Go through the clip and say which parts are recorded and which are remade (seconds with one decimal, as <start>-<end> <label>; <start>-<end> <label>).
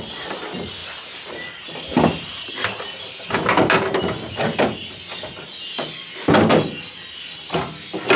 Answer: 0.0-8.2 recorded